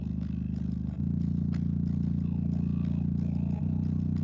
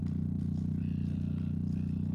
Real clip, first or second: first